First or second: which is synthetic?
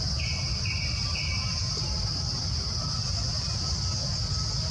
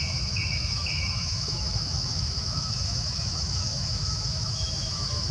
second